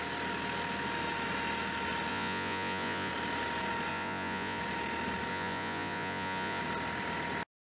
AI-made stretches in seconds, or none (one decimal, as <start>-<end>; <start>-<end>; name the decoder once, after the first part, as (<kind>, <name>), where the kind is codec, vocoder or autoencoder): 2.1-3.1 (vocoder, Vocos); 3.9-4.6; 5.3-6.6